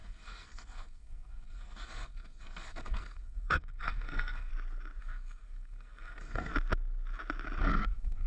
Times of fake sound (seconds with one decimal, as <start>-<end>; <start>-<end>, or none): 0.0-4.5; 5.0-6.5; 7.6-8.3

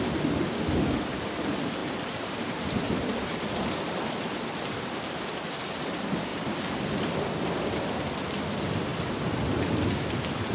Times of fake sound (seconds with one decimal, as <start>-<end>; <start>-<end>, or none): 1.8-4.6; 6.3-7.2; 8.9-10.1

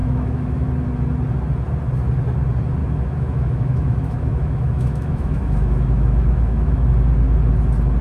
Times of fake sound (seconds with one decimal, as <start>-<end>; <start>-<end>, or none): 0.0-0.7; 2.8-6.9